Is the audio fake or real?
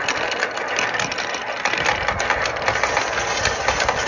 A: real